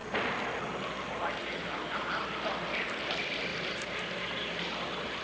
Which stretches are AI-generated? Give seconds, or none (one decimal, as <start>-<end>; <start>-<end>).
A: 0.6-5.2